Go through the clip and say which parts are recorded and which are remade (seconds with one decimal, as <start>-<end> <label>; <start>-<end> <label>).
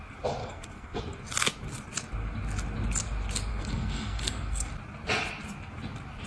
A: 0.0-0.4 recorded; 0.4-1.0 remade; 1.0-3.5 recorded; 3.5-4.7 remade; 4.7-6.3 recorded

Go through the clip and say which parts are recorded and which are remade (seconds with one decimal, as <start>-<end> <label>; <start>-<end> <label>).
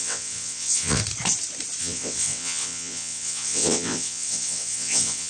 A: 0.0-1.0 remade; 1.0-1.8 recorded; 1.8-5.3 remade